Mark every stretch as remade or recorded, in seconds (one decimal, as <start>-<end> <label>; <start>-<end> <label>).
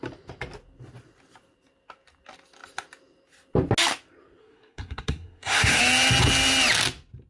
0.0-4.4 recorded; 4.4-5.8 remade; 5.8-7.3 recorded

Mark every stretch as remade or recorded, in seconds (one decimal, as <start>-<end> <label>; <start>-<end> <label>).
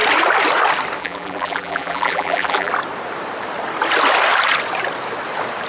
0.0-1.0 recorded; 1.0-2.7 remade; 2.7-5.7 recorded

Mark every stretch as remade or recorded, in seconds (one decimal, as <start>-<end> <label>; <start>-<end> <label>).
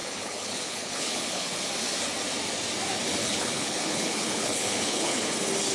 0.0-1.7 remade; 1.7-3.2 recorded; 3.2-5.3 remade; 5.3-5.7 recorded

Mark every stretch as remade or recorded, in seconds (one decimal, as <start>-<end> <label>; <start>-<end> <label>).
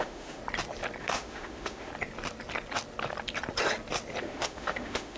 0.0-0.4 remade; 0.4-1.0 recorded; 1.0-1.9 remade; 1.9-4.2 recorded; 4.2-5.2 remade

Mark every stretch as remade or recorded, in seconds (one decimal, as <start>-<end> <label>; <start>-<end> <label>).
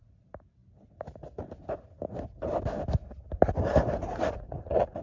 0.0-4.0 recorded; 4.0-5.0 remade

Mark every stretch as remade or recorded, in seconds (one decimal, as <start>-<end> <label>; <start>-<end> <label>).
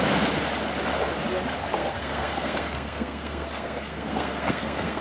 0.0-1.8 recorded; 1.8-5.0 remade